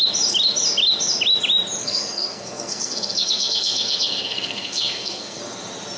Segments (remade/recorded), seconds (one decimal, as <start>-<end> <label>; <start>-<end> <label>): 0.0-1.8 recorded; 1.8-5.4 remade; 5.4-6.0 recorded